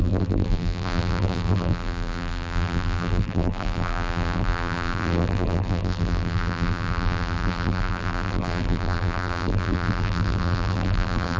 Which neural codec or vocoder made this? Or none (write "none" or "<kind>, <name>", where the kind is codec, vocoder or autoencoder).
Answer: vocoder, BigVGAN v2